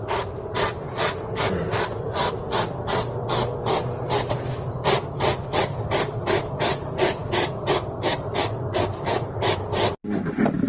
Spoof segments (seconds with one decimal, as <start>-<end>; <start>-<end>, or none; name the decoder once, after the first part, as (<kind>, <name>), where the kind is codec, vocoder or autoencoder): none